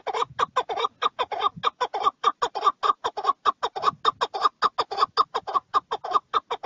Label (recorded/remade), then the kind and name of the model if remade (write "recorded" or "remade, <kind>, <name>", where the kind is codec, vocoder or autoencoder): recorded